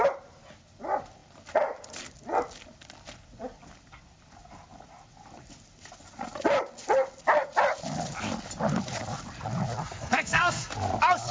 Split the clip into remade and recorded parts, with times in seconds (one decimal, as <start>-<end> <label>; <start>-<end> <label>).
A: 0.0-9.8 recorded; 9.8-10.7 remade; 10.7-11.3 recorded

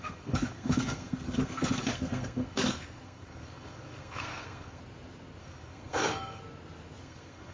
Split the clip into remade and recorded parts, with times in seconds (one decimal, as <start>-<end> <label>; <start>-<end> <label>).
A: 0.0-4.8 remade; 4.8-5.4 recorded; 5.4-6.4 remade; 6.4-7.0 recorded; 7.0-7.5 remade

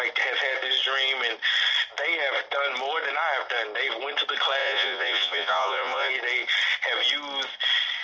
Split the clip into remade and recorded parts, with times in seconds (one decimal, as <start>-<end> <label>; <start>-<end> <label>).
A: 0.0-4.6 recorded; 4.6-6.1 remade; 6.1-8.0 recorded

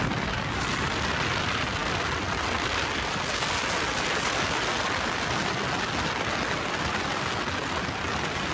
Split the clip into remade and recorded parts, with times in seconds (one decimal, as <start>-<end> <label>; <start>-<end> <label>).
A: 0.0-8.5 recorded

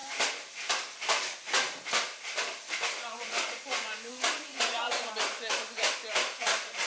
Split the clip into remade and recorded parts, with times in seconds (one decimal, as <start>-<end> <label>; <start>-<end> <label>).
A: 0.0-4.1 recorded; 4.1-4.9 remade; 4.9-6.3 recorded; 6.3-6.9 remade